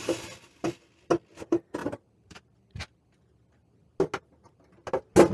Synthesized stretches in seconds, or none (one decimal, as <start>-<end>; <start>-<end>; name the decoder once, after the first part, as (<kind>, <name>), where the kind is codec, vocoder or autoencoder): 1.8-2.4 (vocoder, BigVGAN v2)